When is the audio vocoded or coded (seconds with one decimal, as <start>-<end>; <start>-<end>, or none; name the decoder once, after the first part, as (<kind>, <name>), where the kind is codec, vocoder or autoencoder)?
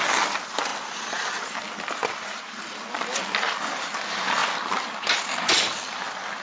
none